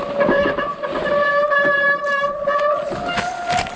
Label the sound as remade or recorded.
recorded